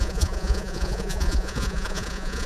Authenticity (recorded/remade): remade